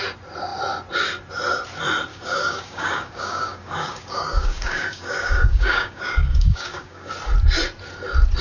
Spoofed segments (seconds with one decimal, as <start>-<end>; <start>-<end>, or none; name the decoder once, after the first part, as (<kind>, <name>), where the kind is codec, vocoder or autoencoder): 2.1-7.1 (codec, DAC)